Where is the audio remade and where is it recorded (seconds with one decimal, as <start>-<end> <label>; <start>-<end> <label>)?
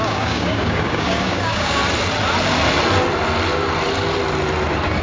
0.0-1.8 remade; 1.8-5.0 recorded